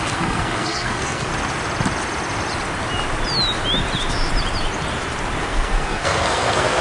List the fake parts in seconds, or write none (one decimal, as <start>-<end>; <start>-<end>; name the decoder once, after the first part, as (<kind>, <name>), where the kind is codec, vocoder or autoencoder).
0.0-1.3 (codec, SNAC); 5.4-6.8